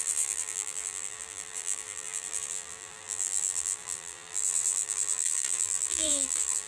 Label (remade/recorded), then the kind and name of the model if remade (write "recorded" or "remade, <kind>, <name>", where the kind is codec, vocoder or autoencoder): remade, vocoder, BigVGAN v2